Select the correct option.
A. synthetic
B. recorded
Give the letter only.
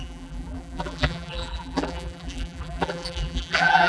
A